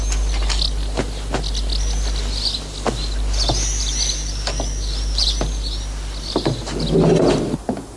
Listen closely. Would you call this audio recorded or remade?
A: recorded